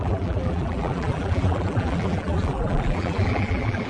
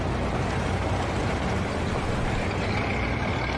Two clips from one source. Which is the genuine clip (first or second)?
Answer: second